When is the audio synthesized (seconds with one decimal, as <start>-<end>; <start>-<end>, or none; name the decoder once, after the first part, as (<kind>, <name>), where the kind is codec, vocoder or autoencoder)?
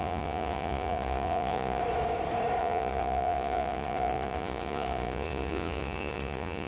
0.0-1.8 (vocoder, Vocos); 2.6-6.7